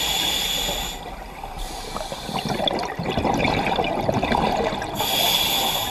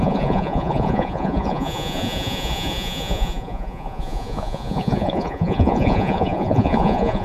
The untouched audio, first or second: first